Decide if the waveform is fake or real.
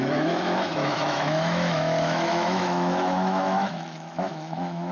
fake